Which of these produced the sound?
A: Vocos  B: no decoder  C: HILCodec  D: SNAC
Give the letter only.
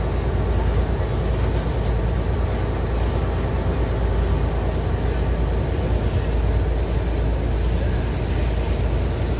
B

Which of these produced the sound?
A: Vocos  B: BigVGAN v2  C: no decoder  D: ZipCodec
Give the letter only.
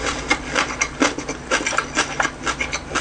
C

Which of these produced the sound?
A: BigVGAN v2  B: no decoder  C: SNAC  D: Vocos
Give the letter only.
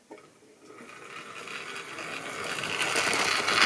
B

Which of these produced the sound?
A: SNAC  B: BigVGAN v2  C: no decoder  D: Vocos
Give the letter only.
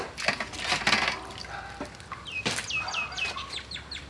C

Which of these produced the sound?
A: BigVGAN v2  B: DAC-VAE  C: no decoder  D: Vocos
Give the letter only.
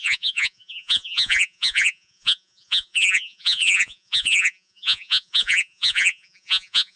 D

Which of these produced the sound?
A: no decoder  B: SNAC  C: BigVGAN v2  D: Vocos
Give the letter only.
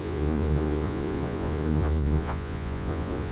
D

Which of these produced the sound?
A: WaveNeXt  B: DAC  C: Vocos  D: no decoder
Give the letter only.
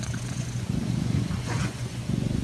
C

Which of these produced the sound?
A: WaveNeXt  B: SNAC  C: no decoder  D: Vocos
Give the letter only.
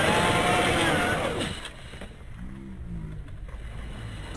C